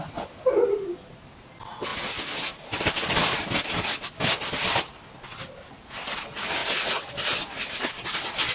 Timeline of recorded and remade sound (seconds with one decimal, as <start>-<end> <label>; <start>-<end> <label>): 0.0-8.5 recorded